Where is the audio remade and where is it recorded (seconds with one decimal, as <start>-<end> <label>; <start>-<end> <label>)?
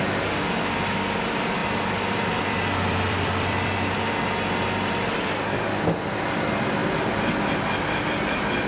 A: 0.0-1.6 recorded; 1.6-4.2 remade; 4.2-8.7 recorded